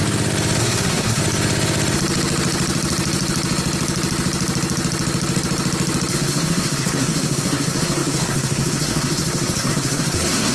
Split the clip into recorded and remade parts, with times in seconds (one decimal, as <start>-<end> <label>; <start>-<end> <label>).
0.0-0.6 recorded; 0.6-1.2 remade; 1.2-6.1 recorded; 6.1-10.5 remade